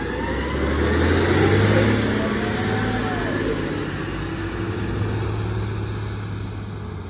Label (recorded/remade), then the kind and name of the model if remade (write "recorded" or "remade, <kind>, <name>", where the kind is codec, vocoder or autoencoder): recorded